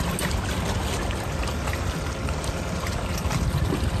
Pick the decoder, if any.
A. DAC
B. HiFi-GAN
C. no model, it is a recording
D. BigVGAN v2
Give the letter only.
C